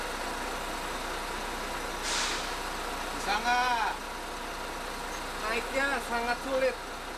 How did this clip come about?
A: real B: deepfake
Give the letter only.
A